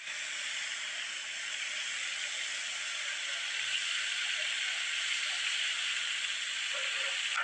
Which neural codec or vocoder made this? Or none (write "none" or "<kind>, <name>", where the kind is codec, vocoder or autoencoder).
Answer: none